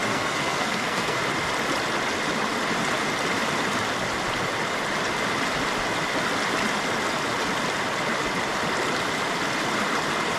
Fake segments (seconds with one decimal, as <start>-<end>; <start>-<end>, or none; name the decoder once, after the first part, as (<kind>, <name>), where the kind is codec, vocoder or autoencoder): 0.0-1.2 (codec, SNAC)